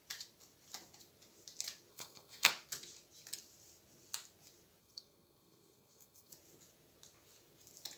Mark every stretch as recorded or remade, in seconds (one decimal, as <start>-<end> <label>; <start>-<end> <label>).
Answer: 0.0-1.9 recorded; 1.9-2.5 remade; 2.5-4.8 recorded; 4.8-6.3 remade; 6.3-8.0 recorded

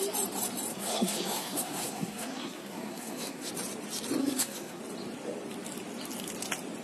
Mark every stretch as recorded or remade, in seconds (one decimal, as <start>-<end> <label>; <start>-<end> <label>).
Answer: 0.0-0.7 recorded; 0.7-3.5 remade; 3.5-4.2 recorded; 4.2-4.8 remade; 4.8-6.8 recorded

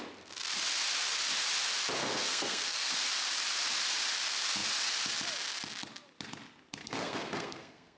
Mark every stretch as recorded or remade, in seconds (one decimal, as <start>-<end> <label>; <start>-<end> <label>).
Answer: 0.0-2.0 recorded; 2.0-2.9 remade; 2.9-6.8 recorded; 6.8-8.0 remade

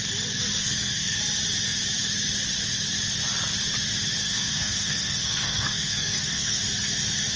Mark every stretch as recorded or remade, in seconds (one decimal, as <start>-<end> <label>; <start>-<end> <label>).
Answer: 0.0-0.6 recorded; 0.6-1.2 remade; 1.2-4.2 recorded; 4.2-6.6 remade; 6.6-7.4 recorded

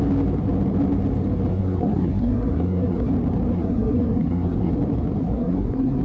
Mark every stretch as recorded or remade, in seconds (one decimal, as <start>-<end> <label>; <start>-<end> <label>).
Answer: 0.0-1.5 recorded; 1.5-3.1 remade; 3.1-3.5 recorded; 3.5-4.7 remade; 4.7-5.2 recorded; 5.2-6.0 remade

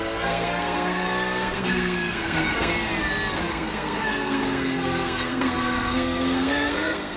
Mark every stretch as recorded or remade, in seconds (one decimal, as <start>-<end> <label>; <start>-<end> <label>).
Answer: 0.0-2.7 remade; 2.7-3.5 recorded; 3.5-7.2 remade

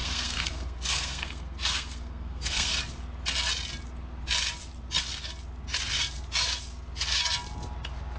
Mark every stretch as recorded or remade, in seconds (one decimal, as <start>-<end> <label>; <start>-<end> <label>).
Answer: 0.0-2.7 remade; 2.7-8.2 recorded

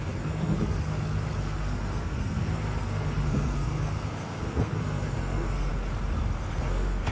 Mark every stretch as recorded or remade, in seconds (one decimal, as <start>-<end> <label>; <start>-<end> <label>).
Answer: 0.0-0.9 remade; 0.9-1.4 recorded; 1.4-5.7 remade; 5.7-6.4 recorded; 6.4-7.1 remade